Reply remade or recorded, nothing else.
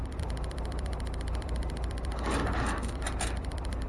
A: remade